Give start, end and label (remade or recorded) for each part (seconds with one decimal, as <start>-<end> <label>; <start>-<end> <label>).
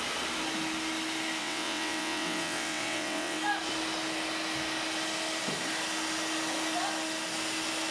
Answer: 0.0-1.4 recorded; 1.4-3.4 remade; 3.4-7.9 recorded